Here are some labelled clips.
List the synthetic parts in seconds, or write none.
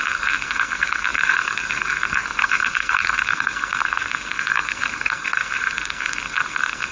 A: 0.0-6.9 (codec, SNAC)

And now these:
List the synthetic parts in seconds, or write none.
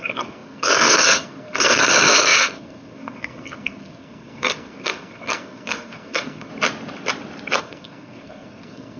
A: 0.0-6.5 (codec, SNAC); 7.6-9.0